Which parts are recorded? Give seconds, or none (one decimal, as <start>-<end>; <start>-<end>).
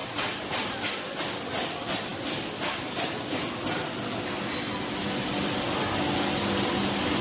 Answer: 0.0-7.2